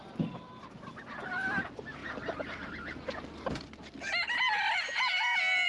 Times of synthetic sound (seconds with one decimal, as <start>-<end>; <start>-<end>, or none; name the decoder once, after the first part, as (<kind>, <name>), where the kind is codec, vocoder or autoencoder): none